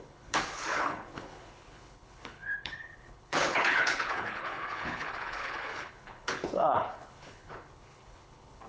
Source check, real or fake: fake